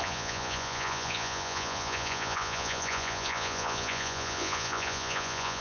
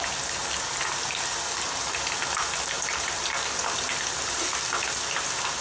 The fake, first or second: first